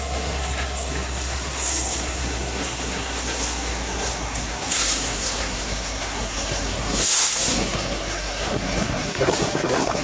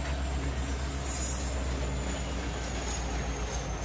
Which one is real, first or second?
second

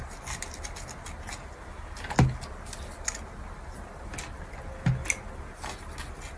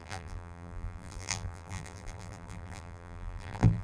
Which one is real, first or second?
first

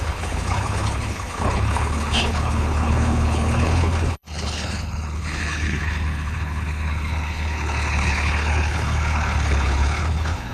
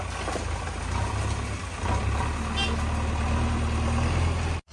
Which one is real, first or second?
second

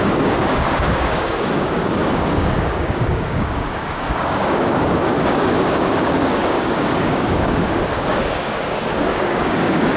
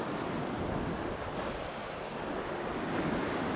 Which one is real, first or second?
second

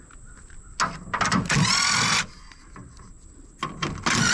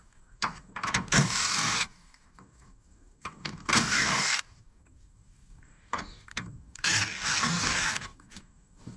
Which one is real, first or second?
first